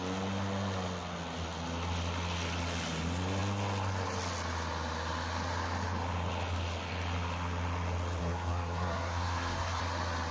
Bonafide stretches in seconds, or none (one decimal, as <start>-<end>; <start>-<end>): 0.0-8.2; 9.8-10.3